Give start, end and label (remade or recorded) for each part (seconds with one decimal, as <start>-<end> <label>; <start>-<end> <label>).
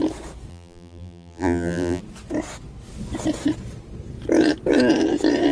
0.0-0.5 recorded; 0.5-2.0 remade; 2.0-5.5 recorded